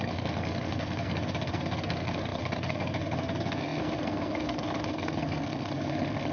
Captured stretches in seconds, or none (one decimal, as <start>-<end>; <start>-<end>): none